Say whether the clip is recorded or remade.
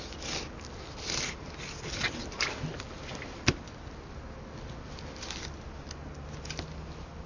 recorded